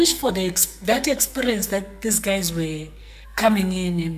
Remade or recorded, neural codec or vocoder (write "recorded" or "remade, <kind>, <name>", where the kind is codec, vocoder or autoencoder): remade, codec, SNAC